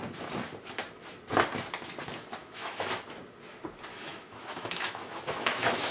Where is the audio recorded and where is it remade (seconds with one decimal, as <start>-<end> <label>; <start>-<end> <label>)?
0.0-2.4 recorded; 2.4-2.9 remade; 2.9-3.9 recorded; 3.9-5.9 remade